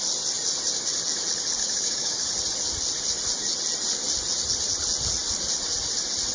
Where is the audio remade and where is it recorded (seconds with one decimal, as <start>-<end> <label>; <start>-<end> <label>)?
0.0-1.6 recorded; 1.6-2.3 remade; 2.3-6.3 recorded